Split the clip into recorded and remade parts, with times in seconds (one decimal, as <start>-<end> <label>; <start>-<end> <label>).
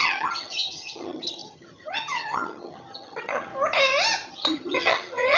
0.0-3.5 remade; 3.5-4.3 recorded; 4.3-5.4 remade